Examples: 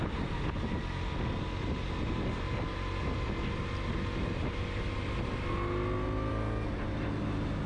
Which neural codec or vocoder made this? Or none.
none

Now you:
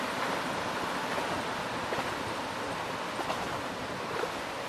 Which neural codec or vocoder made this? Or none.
none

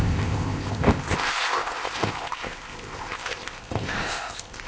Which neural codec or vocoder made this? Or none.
codec, ZipCodec